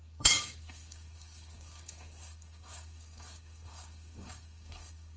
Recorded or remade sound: remade